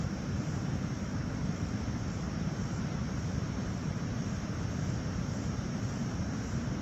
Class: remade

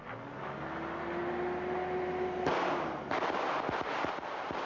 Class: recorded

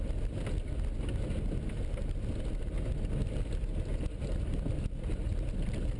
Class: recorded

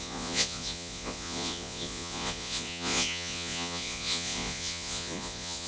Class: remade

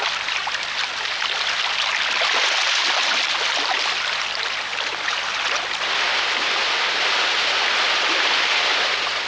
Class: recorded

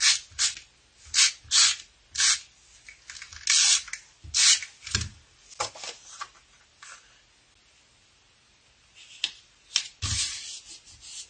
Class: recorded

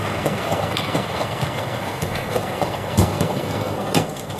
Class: remade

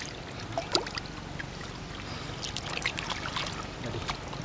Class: recorded